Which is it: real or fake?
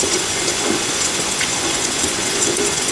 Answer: fake